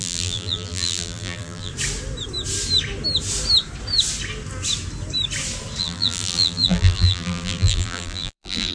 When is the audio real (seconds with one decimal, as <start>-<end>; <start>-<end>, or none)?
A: 1.7-5.8